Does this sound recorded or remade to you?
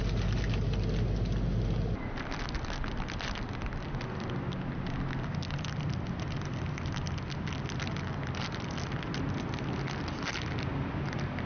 recorded